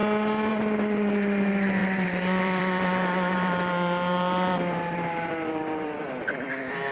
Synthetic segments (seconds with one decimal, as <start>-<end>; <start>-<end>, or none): 1.8-5.9